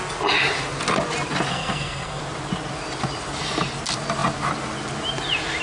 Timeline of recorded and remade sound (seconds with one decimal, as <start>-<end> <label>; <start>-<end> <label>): 0.0-1.5 recorded; 1.5-2.2 remade; 2.2-5.6 recorded

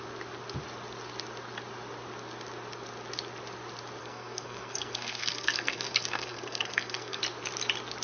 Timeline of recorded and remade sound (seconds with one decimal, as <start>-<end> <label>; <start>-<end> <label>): 0.0-4.0 recorded; 4.0-7.2 remade; 7.2-8.0 recorded

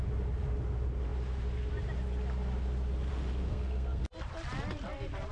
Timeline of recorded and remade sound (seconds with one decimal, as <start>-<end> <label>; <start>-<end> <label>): 0.0-3.5 recorded; 3.5-4.0 remade; 4.0-5.3 recorded

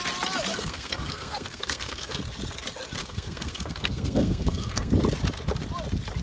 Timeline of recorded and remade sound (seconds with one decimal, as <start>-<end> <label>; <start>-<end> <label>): 0.0-0.5 recorded; 0.5-2.2 remade; 2.2-3.0 recorded; 3.0-4.9 remade; 4.9-6.2 recorded

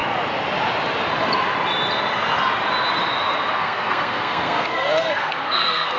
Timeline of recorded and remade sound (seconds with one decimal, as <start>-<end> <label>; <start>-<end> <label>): 0.0-3.6 recorded; 3.6-6.0 remade